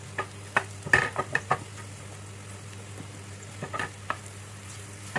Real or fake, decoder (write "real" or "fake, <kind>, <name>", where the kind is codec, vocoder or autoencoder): fake, vocoder, BigVGAN v2